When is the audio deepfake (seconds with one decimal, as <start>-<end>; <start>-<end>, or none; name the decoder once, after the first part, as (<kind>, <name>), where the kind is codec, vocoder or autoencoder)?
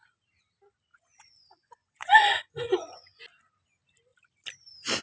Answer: 0.9-3.2 (vocoder, Vocos)